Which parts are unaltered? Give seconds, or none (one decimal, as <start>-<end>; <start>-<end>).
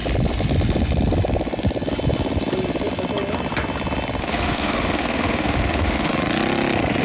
0.0-4.2; 6.1-7.0